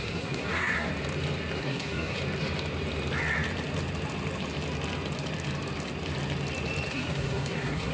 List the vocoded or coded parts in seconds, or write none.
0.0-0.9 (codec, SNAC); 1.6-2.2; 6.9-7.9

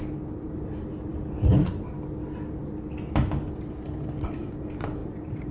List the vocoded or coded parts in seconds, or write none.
5.0-5.5 (vocoder, BigVGAN v2)